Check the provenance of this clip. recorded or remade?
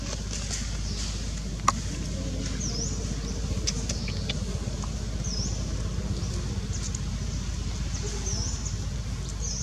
recorded